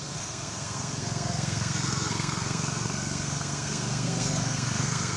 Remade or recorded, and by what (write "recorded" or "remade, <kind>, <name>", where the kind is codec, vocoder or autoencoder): remade, codec, SNAC